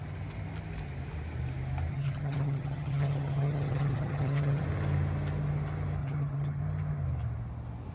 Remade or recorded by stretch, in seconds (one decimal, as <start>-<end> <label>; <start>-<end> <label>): 0.0-1.9 recorded; 1.9-4.6 remade; 4.6-6.0 recorded; 6.0-6.6 remade; 6.6-7.9 recorded